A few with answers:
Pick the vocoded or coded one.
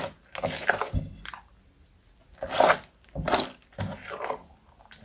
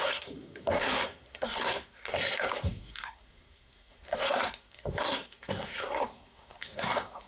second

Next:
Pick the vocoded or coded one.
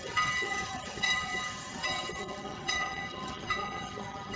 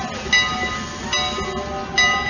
first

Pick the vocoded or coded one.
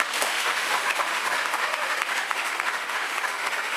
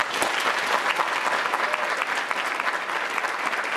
first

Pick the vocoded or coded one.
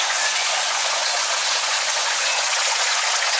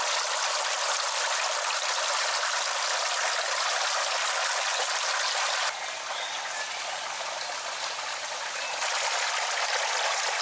first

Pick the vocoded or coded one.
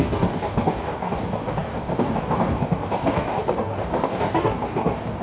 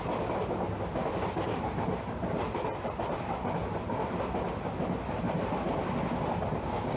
first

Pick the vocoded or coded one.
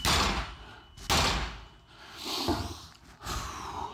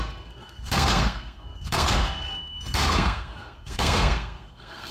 second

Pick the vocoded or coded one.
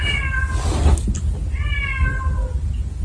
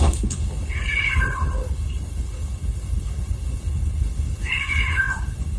second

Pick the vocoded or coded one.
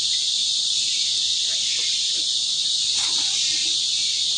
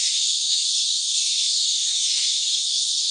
second